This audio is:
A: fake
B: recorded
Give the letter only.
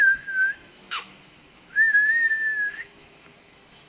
A